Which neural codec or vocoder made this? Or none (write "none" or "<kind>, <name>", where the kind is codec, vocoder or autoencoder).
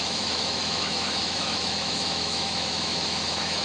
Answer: autoencoder, DAC-VAE